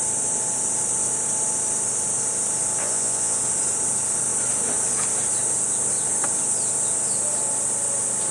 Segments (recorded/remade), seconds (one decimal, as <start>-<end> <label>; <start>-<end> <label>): 0.0-2.8 recorded; 2.8-3.4 remade; 3.4-8.3 recorded